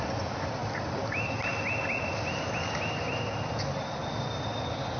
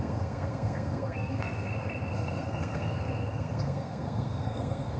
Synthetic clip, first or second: second